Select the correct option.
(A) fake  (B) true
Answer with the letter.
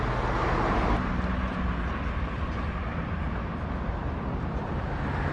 B